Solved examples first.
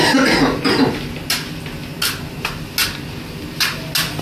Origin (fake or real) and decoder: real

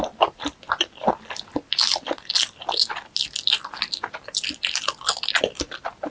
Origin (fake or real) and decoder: real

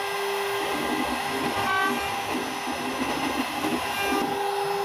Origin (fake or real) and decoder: real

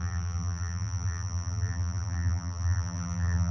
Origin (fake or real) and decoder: fake, vocoder, BigVGAN v2